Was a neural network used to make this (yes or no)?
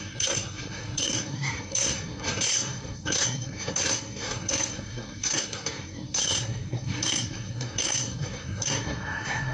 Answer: yes